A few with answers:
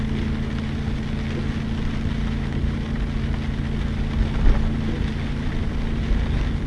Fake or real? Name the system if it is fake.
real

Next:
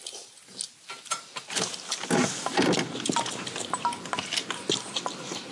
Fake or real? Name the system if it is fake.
real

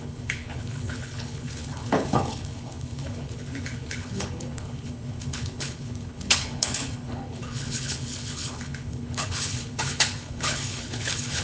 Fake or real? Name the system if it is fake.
fake, codec, HILCodec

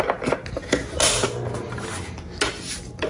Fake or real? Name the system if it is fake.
real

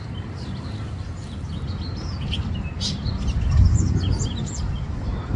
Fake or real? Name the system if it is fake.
real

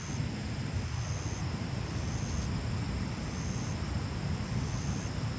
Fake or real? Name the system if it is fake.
real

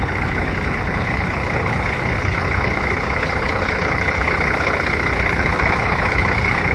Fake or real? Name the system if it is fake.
fake, codec, HILCodec